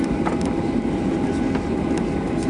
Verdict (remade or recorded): recorded